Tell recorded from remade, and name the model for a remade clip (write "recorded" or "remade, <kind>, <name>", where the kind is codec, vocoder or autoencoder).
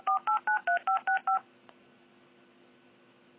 recorded